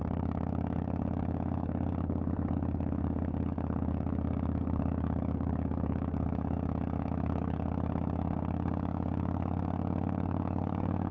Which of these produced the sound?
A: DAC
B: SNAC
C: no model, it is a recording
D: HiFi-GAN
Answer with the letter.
A